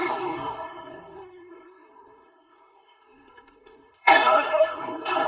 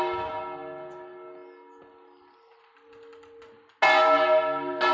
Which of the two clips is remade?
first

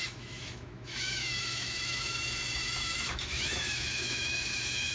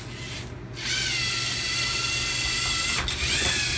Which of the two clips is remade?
first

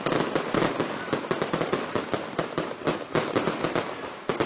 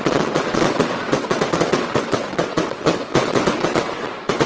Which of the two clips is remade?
second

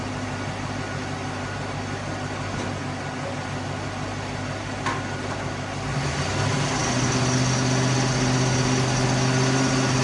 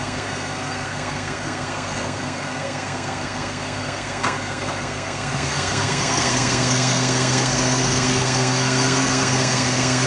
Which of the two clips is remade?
second